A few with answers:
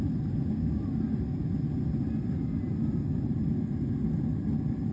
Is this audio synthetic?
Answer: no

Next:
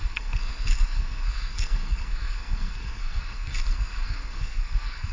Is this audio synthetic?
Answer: yes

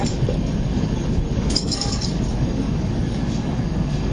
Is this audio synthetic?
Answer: yes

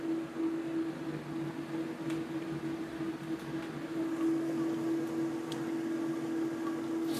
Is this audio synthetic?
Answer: no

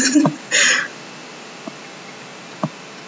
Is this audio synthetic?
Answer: no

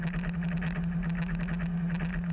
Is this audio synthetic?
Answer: no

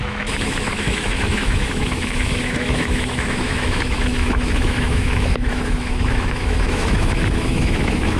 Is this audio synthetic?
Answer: yes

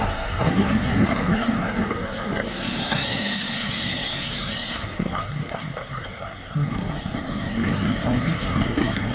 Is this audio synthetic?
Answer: yes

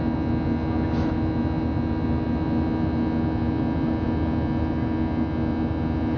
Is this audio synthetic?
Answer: no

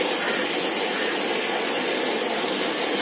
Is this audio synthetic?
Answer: no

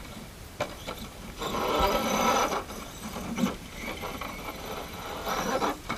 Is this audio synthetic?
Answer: yes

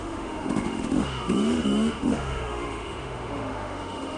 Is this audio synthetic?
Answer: yes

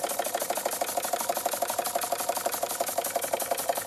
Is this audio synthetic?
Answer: no